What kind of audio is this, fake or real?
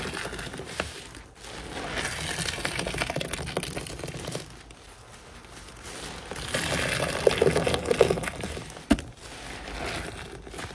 real